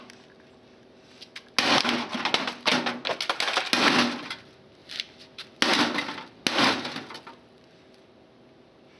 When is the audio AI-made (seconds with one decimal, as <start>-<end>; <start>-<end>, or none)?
none

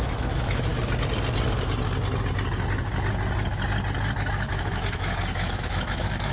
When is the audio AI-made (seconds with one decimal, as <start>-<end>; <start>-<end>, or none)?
0.0-0.7; 4.5-6.3

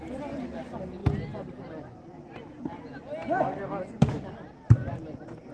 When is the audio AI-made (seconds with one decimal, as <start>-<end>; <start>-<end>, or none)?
none

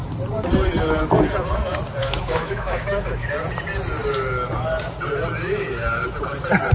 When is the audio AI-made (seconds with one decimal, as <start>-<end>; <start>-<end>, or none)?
2.0-3.3